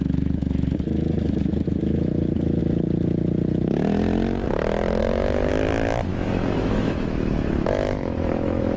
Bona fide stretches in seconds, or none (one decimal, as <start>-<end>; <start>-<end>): 2.6-5.0; 5.5-6.1